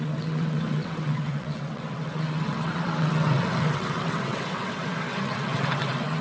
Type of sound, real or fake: fake